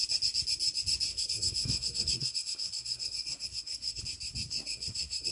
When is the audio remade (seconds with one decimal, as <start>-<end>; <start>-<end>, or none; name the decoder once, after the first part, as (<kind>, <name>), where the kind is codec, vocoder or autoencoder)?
1.1-4.0 (codec, SNAC); 4.5-5.3